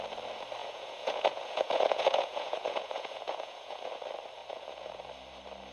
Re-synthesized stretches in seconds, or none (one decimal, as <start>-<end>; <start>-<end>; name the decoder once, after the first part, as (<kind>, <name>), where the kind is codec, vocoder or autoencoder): 0.6-3.9 (vocoder, Vocos); 4.4-5.0